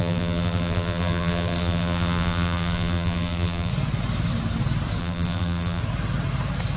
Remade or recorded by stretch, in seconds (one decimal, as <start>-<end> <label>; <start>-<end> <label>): 0.0-3.7 remade; 3.7-5.0 recorded; 5.0-5.8 remade; 5.8-6.8 recorded